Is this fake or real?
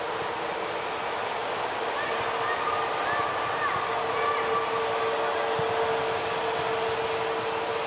real